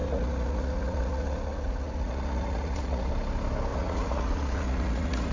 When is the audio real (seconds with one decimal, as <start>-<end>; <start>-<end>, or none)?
3.1-3.7